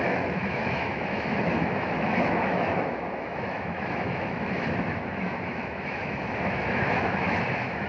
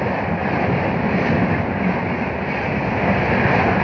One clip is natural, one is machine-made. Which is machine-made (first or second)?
first